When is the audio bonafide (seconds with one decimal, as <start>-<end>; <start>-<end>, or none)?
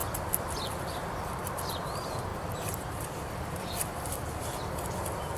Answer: none